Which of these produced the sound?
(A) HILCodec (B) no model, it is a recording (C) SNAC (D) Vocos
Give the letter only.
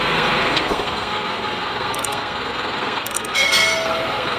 C